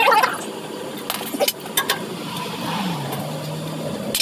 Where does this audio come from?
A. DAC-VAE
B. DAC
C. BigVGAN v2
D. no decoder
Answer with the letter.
D